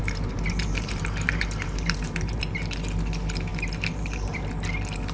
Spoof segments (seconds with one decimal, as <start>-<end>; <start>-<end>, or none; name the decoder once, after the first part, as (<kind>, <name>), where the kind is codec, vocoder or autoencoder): 0.0-2.4 (vocoder, BigVGAN v2); 3.5-4.4